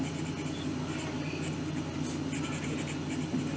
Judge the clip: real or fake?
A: real